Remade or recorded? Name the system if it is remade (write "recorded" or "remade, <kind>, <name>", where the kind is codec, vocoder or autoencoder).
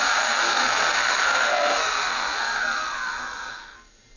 remade, codec, SNAC